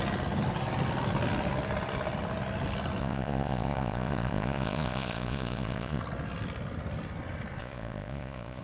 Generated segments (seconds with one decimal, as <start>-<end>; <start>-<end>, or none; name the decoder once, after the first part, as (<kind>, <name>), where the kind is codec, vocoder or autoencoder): 3.0-6.0 (vocoder, Vocos); 7.6-8.6